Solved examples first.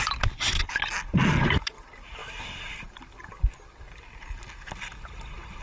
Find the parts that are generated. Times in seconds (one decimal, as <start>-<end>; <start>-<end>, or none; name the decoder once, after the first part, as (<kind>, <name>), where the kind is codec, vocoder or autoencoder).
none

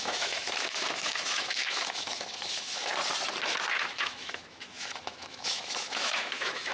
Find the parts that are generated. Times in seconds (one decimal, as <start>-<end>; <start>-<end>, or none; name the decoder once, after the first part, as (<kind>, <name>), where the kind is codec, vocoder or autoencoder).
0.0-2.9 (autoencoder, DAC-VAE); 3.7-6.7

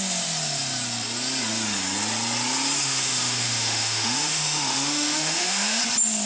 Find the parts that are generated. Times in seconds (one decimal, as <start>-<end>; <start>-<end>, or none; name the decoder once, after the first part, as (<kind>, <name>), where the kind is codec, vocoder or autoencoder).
2.8-5.8 (autoencoder, DAC-VAE)

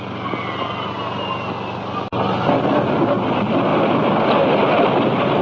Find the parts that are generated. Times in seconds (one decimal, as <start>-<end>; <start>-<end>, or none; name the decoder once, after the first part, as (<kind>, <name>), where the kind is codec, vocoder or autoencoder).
none

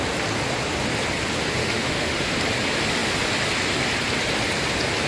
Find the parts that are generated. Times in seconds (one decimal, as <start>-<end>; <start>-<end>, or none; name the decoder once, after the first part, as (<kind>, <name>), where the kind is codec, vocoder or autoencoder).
1.6-2.3 (autoencoder, DAC-VAE)

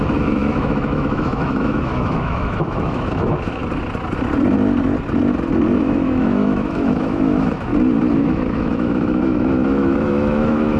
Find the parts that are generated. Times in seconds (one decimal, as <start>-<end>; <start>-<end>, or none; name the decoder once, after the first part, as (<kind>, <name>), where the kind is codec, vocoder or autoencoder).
0.0-3.6 (autoencoder, DAC-VAE); 5.8-7.7; 8.2-10.8

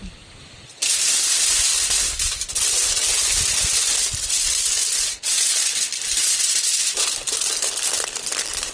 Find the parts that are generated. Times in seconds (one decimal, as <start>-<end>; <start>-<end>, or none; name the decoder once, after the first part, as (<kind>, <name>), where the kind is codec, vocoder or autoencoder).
none